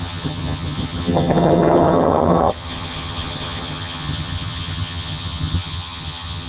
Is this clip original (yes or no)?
no